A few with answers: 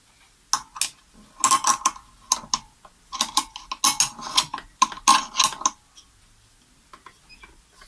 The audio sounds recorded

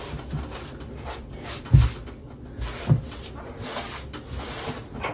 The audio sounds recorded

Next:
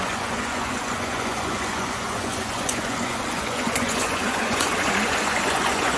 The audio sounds remade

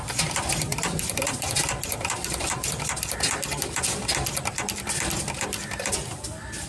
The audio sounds remade